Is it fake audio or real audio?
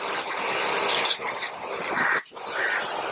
real